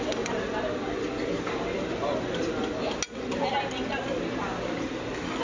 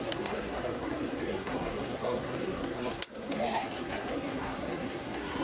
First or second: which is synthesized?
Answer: second